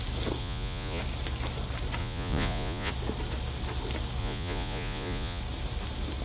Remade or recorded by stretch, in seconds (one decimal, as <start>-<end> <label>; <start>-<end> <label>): 0.0-0.4 recorded; 0.4-1.0 remade; 1.0-2.0 recorded; 2.0-2.9 remade; 2.9-4.2 recorded; 4.2-5.4 remade; 5.4-6.2 recorded